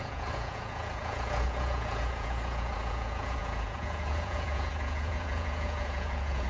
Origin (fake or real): fake